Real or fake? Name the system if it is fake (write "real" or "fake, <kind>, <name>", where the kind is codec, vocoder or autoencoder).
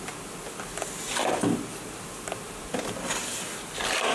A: real